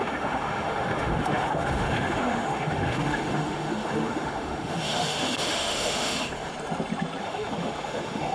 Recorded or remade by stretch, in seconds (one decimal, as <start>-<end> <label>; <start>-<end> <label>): 0.0-6.5 remade; 6.5-7.2 recorded; 7.2-8.3 remade

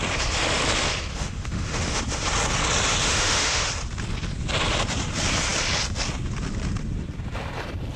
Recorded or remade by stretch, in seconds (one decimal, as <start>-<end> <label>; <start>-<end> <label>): 0.0-1.1 recorded; 1.1-2.0 remade; 2.0-3.0 recorded; 3.0-3.7 remade; 3.7-8.0 recorded